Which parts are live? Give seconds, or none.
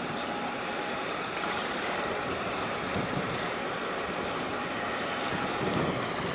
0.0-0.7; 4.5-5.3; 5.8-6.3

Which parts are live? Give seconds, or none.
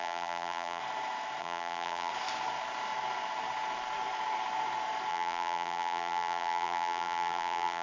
0.8-1.4; 2.1-5.1